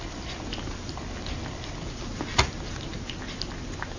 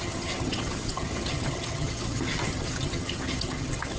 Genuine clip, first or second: first